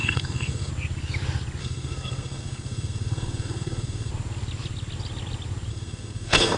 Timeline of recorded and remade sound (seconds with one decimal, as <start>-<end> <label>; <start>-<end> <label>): 0.0-0.7 remade; 0.7-1.6 recorded; 1.6-4.1 remade; 4.1-5.7 recorded; 5.7-6.6 remade